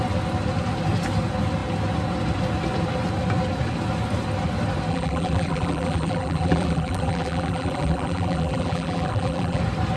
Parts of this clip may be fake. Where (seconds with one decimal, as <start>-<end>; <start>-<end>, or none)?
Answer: 4.9-9.6